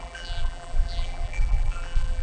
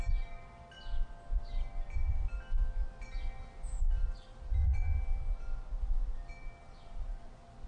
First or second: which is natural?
second